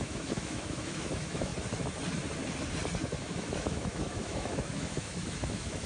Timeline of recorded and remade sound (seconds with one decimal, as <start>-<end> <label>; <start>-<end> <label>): 0.0-1.5 remade; 1.5-3.0 recorded; 3.0-5.9 remade